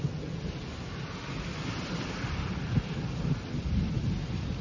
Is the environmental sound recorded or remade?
recorded